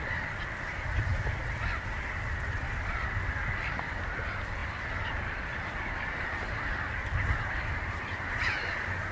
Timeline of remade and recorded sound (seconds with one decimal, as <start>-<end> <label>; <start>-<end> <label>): 0.0-1.1 remade; 1.1-1.8 recorded; 1.8-9.1 remade